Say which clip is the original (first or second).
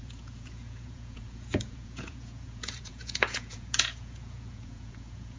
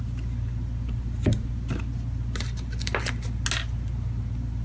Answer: second